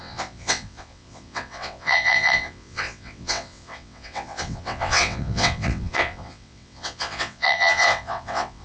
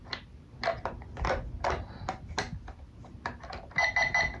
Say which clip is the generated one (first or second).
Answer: first